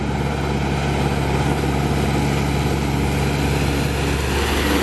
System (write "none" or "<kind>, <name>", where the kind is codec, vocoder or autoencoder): none